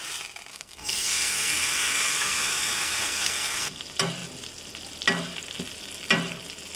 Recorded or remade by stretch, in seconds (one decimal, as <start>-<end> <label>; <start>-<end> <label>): 0.0-0.5 recorded; 0.5-3.8 remade; 3.8-6.8 recorded